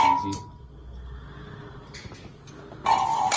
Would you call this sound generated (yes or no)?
no